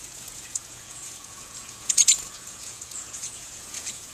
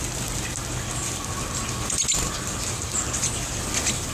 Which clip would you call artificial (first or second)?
first